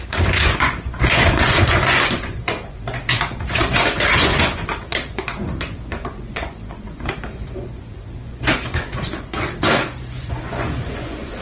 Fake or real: fake